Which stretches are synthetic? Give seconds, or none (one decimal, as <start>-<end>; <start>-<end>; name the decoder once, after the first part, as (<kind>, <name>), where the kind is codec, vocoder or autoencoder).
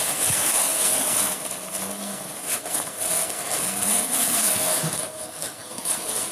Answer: 0.0-6.3 (codec, SNAC)